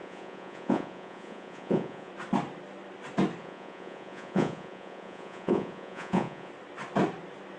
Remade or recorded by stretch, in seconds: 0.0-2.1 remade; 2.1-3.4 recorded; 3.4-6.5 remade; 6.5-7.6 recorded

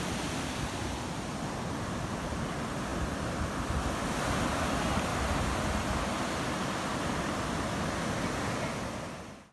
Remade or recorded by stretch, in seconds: 0.0-5.1 recorded; 5.1-6.6 remade; 6.6-9.5 recorded

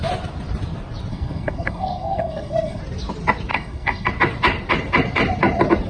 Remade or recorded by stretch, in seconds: 0.0-1.1 recorded; 1.1-2.8 remade; 2.8-3.5 recorded; 3.5-4.1 remade; 4.1-5.9 recorded

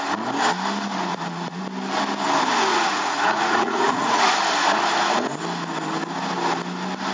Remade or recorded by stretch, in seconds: 0.0-1.1 recorded; 1.1-1.6 remade; 1.6-2.7 recorded; 2.7-4.3 remade; 4.3-7.1 recorded

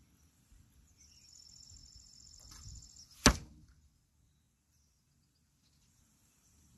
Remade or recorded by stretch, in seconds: 0.0-1.8 remade; 1.8-5.9 recorded; 5.9-6.8 remade

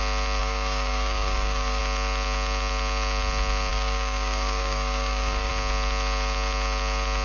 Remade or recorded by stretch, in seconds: 0.0-0.4 recorded; 0.4-1.8 remade; 1.8-3.7 recorded; 3.7-5.5 remade; 5.5-7.2 recorded

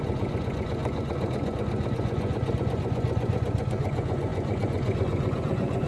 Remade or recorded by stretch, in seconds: 0.0-5.9 remade

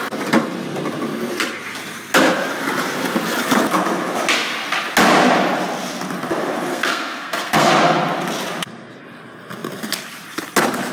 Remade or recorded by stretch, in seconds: 0.0-6.7 recorded; 6.7-7.7 remade; 7.7-10.9 recorded